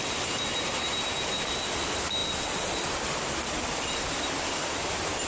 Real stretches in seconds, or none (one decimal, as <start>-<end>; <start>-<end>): 0.0-5.3